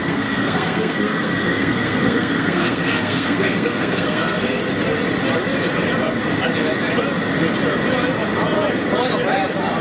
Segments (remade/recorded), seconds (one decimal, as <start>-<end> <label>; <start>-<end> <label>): 0.0-4.6 remade; 4.6-9.8 recorded